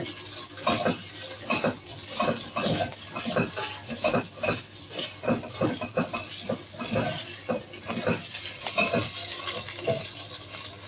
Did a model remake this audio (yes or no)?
no